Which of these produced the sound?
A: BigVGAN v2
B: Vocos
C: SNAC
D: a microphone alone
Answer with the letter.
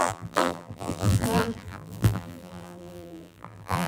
A